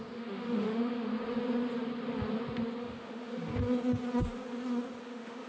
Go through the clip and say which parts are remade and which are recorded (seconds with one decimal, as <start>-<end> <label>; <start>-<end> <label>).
0.0-1.1 remade; 1.1-2.8 recorded; 2.8-3.3 remade; 3.3-5.0 recorded; 5.0-5.5 remade